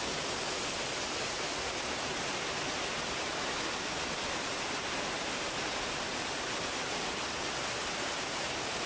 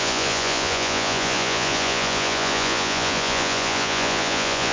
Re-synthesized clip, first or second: second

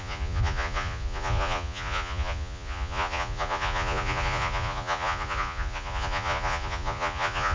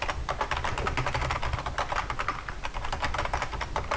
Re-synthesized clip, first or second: first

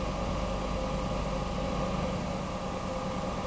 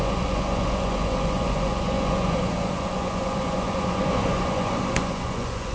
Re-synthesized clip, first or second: second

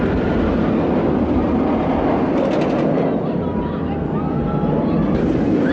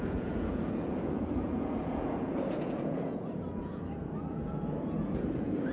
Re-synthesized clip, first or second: second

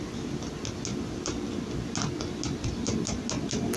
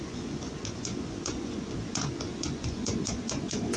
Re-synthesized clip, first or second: second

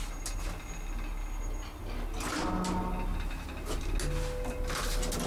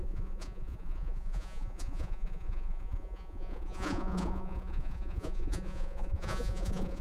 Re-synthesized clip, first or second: second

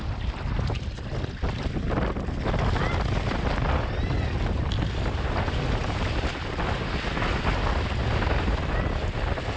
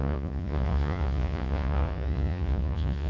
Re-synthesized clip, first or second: second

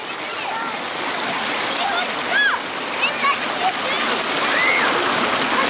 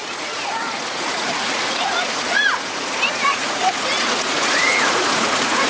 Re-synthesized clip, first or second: second